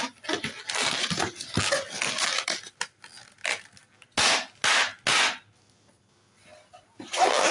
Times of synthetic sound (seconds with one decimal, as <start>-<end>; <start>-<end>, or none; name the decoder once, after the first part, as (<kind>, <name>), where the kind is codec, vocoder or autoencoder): none